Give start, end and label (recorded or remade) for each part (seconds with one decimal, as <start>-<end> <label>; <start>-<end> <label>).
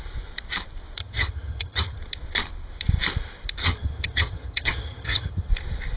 0.0-1.0 recorded; 1.0-2.0 remade; 2.0-3.6 recorded; 3.6-5.5 remade; 5.5-6.0 recorded